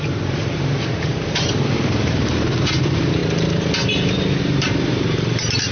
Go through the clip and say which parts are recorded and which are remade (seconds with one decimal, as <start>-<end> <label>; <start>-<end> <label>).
0.0-3.2 remade; 3.2-4.4 recorded; 4.4-5.7 remade